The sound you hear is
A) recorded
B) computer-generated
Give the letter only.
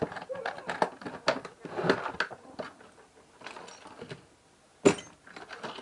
A